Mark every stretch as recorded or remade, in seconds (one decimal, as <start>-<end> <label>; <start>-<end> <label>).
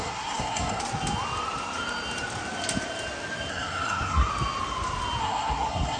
0.0-0.8 remade; 0.8-3.5 recorded; 3.5-4.3 remade; 4.3-5.2 recorded; 5.2-6.0 remade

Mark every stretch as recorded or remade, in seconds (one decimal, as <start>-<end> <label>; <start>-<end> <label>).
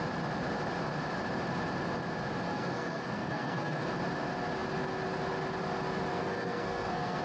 0.0-2.5 recorded; 2.5-3.9 remade; 3.9-6.1 recorded; 6.1-7.2 remade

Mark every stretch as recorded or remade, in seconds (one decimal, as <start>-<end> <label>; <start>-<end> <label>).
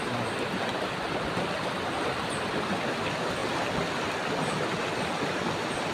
0.0-5.9 recorded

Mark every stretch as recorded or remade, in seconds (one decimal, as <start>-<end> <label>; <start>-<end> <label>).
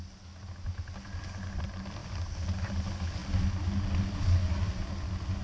0.0-5.4 recorded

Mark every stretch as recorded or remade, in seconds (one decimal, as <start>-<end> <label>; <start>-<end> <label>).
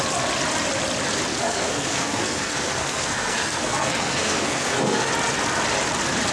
0.0-1.3 recorded; 1.3-5.1 remade; 5.1-6.3 recorded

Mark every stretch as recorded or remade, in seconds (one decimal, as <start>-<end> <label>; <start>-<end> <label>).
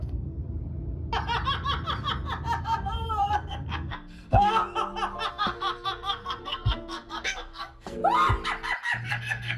0.0-0.4 remade; 0.4-2.6 recorded; 2.6-4.6 remade; 4.6-5.3 recorded; 5.3-8.0 remade; 8.0-9.1 recorded; 9.1-9.6 remade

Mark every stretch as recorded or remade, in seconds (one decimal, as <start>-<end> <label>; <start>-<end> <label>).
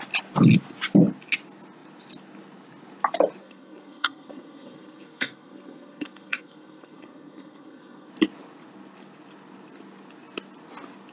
0.0-3.4 recorded; 3.4-8.1 remade; 8.1-11.1 recorded